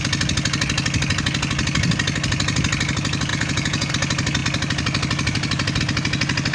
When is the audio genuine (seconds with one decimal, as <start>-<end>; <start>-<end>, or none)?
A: 0.0-3.3; 3.9-6.5